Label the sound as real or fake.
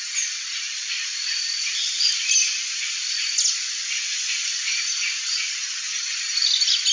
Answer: real